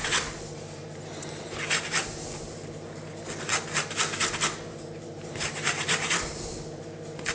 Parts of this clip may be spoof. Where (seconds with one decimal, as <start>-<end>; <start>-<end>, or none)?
0.0-3.1; 4.7-6.1